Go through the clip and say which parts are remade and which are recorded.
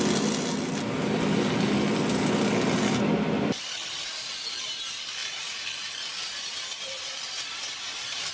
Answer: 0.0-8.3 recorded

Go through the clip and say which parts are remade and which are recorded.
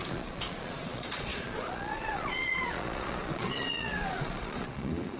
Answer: 0.0-5.2 remade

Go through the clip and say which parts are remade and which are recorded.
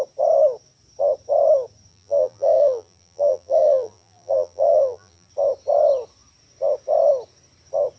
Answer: 0.0-1.9 recorded; 1.9-5.3 remade; 5.3-8.0 recorded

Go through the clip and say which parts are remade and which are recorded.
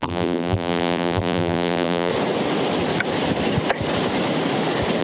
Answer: 0.0-2.1 remade; 2.1-5.0 recorded